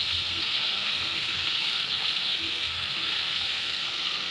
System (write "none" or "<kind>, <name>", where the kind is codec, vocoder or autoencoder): codec, SNAC